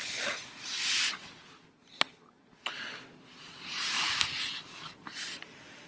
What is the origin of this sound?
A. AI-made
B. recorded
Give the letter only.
B